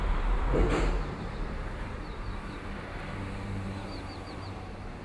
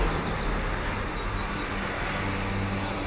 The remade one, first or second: first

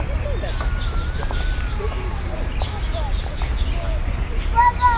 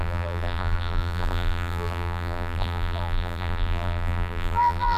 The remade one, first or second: second